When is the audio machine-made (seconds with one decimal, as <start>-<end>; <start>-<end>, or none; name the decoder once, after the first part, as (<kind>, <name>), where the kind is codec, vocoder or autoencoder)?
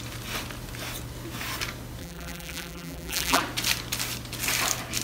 2.0-3.4 (vocoder, BigVGAN v2)